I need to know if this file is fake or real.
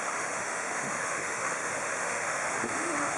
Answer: fake